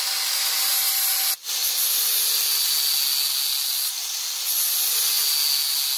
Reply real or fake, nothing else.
real